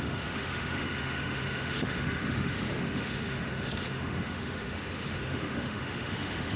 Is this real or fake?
fake